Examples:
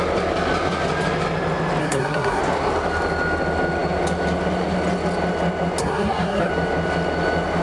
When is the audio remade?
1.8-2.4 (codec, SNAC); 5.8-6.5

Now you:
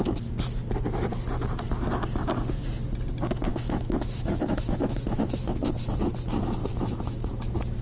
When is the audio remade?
3.5-5.7 (autoencoder, DAC-VAE); 6.6-7.3

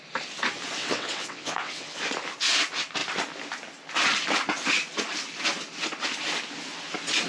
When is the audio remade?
0.8-2.0 (vocoder, WaveNeXt)

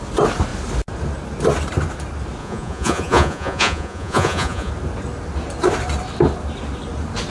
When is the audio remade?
2.4-4.7 (vocoder, Vocos)

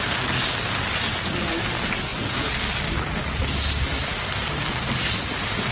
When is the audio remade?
none

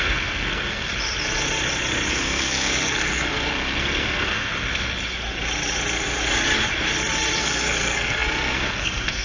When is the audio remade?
0.0-0.9 (codec, SNAC); 2.1-4.5; 7.4-9.2

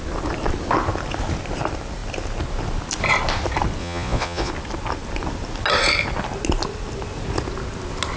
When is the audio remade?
3.8-4.5 (vocoder, Vocos)

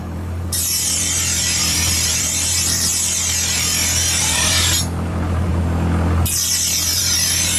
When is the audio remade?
0.0-2.9 (vocoder, BigVGAN v2); 4.2-5.5; 7.0-7.6